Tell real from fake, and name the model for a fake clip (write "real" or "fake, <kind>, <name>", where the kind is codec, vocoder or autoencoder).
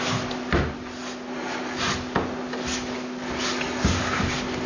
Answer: real